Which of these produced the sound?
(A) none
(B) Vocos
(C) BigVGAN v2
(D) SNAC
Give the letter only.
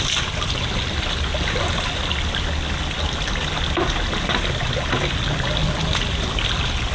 A